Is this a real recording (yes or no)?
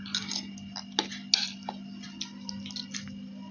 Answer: yes